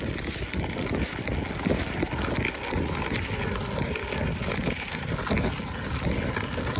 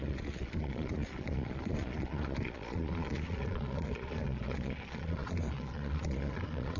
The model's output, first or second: second